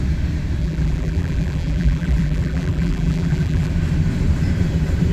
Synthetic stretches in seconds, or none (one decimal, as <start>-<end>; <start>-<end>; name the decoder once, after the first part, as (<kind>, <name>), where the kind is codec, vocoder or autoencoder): 0.6-3.7 (vocoder, BigVGAN v2)